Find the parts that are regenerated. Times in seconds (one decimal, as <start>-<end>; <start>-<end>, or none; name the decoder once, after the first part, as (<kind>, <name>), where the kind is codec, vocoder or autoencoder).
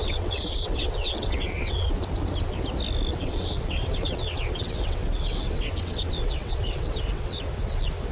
0.0-1.9 (vocoder, WaveNeXt); 3.1-7.4